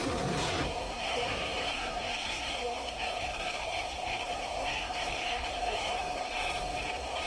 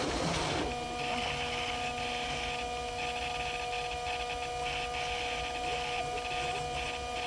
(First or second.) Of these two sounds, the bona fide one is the second